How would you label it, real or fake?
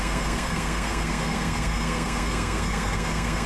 fake